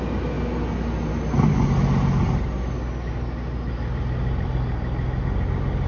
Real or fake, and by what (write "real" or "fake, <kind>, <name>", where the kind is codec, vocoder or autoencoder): real